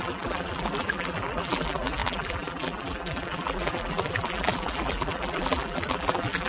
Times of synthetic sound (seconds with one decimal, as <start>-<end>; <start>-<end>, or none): 0.0-6.5